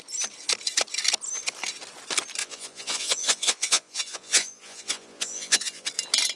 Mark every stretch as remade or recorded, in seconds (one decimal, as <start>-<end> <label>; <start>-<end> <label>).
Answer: 0.0-2.4 recorded; 2.4-5.9 remade; 5.9-6.4 recorded